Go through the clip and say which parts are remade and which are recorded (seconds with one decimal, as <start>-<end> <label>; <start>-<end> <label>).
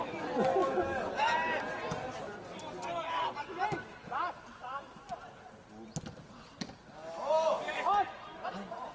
0.0-8.9 recorded